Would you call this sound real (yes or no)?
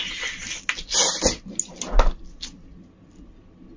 yes